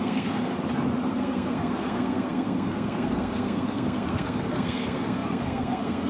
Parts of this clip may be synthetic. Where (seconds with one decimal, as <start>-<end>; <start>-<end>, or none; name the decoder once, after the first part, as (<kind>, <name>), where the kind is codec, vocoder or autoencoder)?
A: 0.0-0.5 (codec, SNAC); 1.1-6.1